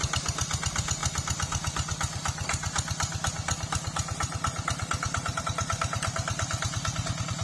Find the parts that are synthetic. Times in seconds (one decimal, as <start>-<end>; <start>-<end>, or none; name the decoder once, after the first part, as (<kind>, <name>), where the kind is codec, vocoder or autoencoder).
none